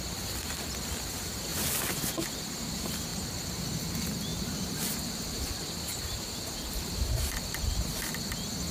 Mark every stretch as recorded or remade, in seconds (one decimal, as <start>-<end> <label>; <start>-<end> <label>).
0.0-3.1 recorded; 3.1-3.6 remade; 3.6-4.3 recorded; 4.3-7.8 remade; 7.8-8.7 recorded